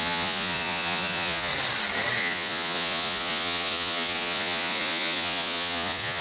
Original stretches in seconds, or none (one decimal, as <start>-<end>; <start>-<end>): 1.5-2.2